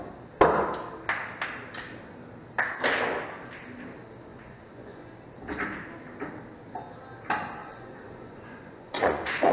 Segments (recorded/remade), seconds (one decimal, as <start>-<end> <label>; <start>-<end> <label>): 0.0-4.3 recorded; 4.3-5.1 remade; 5.1-7.6 recorded; 7.6-9.5 remade